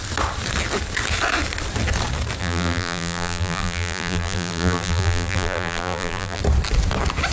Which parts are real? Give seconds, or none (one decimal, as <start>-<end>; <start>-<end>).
0.0-2.4; 6.4-7.3